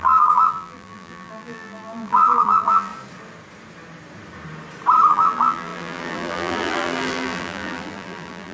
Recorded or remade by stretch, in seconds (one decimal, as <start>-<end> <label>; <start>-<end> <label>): 0.0-2.9 remade; 2.9-5.1 recorded; 5.1-8.5 remade